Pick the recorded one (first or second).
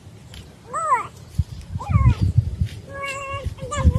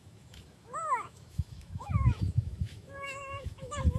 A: first